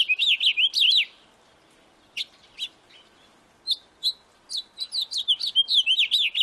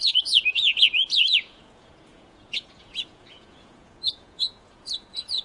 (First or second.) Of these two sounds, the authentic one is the first